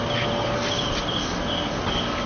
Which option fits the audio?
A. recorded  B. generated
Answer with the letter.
A